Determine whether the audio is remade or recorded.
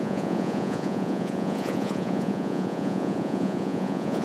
remade